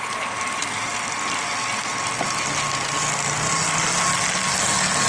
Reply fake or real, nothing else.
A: real